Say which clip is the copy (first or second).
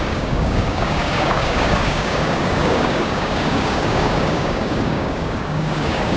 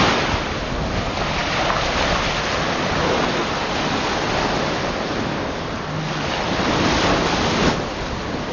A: first